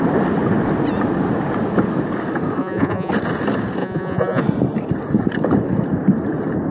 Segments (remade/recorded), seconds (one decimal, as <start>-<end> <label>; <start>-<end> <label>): 0.0-2.6 recorded; 2.6-3.1 remade; 3.1-3.8 recorded; 3.8-4.4 remade; 4.4-6.7 recorded